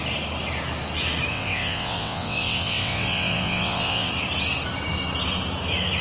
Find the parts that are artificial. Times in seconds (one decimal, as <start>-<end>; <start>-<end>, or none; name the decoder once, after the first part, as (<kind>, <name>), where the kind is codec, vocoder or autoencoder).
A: 1.3-4.1 (vocoder, WaveNeXt)